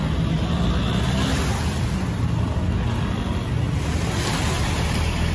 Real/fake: real